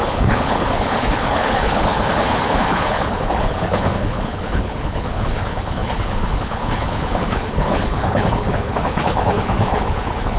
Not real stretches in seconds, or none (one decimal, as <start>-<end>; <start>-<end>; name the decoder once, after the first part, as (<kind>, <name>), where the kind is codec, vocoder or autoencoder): 0.0-10.4 (codec, HILCodec)